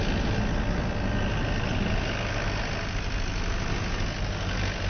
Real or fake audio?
real